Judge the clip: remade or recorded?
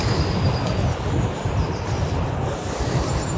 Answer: recorded